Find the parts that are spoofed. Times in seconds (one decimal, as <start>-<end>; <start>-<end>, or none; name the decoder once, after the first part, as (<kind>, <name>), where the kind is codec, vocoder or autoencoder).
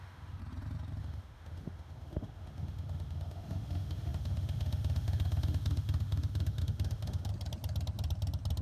0.0-0.4 (autoencoder, DAC-VAE); 1.0-7.3